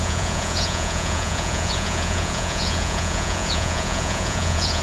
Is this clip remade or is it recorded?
remade